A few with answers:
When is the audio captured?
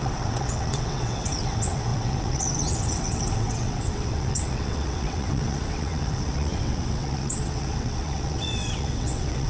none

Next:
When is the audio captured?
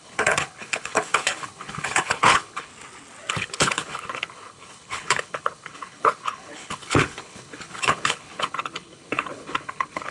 2.7-3.3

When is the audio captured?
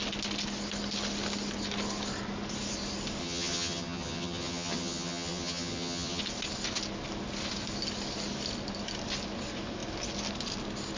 0.0-3.2; 6.2-11.0